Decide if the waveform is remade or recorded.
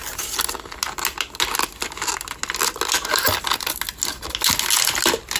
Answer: recorded